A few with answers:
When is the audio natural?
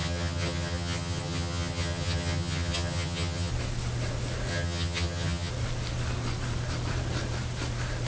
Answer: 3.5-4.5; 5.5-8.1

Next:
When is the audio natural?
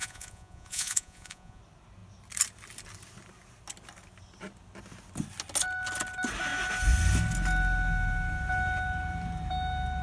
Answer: 1.6-10.0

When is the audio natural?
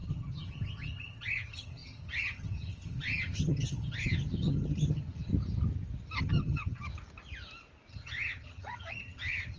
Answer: 5.3-6.2; 6.9-7.9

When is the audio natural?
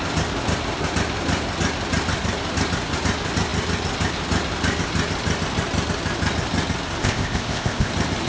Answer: 0.0-7.0; 7.9-8.3